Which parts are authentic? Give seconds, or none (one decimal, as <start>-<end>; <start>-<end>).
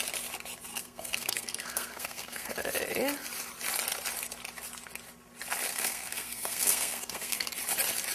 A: 0.0-0.7; 2.5-5.7; 7.5-8.1